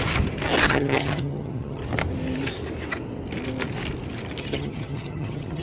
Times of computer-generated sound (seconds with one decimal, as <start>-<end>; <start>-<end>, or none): 0.6-1.8; 4.4-5.6